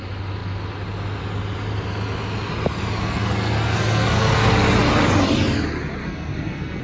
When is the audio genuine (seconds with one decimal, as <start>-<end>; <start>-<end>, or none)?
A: 0.0-3.0; 4.5-6.0